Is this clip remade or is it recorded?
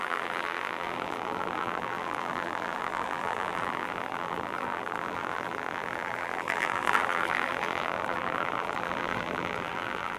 remade